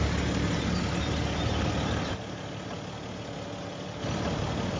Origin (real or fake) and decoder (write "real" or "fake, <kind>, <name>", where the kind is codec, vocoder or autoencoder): real